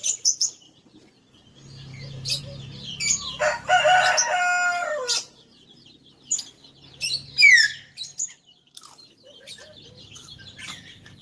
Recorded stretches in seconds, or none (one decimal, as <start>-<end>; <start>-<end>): 0.0-1.9; 2.4-11.2